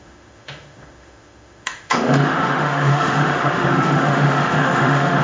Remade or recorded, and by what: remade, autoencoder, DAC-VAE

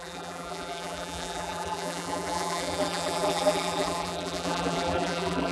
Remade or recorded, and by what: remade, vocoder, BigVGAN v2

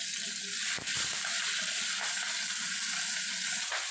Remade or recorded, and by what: recorded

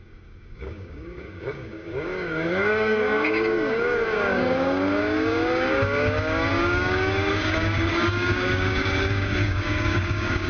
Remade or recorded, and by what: remade, codec, DAC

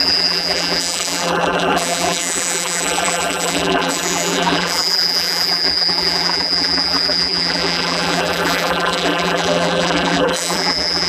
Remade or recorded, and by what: remade, vocoder, BigVGAN v2